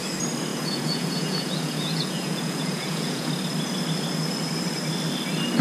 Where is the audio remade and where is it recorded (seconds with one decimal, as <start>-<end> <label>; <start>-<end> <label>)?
0.0-0.5 recorded; 0.5-3.3 remade; 3.3-5.6 recorded